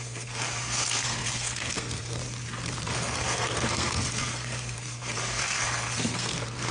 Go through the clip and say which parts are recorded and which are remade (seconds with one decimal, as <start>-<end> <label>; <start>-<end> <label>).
0.0-2.2 remade; 2.2-2.8 recorded; 2.8-6.7 remade